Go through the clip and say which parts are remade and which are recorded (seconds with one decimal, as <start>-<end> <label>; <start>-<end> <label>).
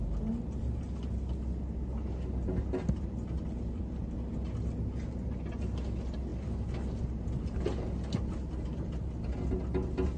0.0-10.2 recorded